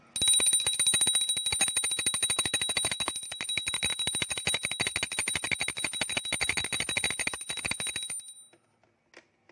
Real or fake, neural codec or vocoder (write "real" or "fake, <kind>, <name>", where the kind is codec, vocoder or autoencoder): real